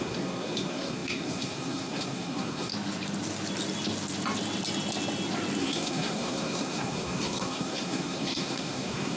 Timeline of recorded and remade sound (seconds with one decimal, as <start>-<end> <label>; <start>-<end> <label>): 0.0-2.7 remade; 2.7-5.6 recorded; 5.6-9.2 remade